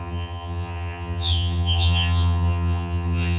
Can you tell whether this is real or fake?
fake